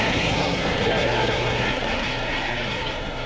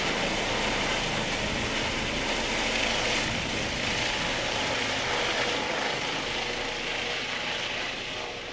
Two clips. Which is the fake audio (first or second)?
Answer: first